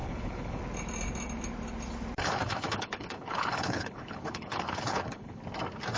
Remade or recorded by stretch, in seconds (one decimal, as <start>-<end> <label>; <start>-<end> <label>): 0.0-0.6 remade; 0.6-2.2 recorded; 2.2-5.4 remade; 5.4-6.0 recorded